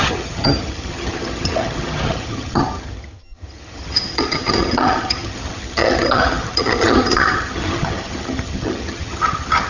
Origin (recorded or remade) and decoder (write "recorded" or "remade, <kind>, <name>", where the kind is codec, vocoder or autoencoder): remade, vocoder, HiFi-GAN